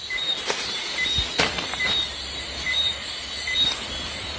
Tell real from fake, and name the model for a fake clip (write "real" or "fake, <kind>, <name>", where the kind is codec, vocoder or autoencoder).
real